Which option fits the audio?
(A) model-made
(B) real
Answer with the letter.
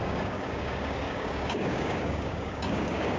A